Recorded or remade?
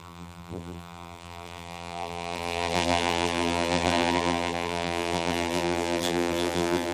remade